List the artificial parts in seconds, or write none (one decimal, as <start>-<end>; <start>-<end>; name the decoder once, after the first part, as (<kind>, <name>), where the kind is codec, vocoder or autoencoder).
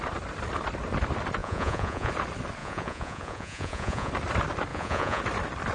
1.4-2.1 (vocoder, Vocos); 2.6-4.1; 4.7-5.2